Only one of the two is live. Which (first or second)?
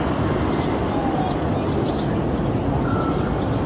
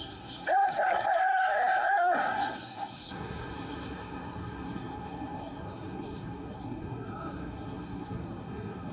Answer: first